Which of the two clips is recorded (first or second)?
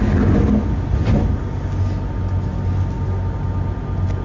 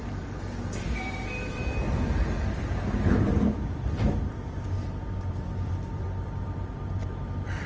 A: first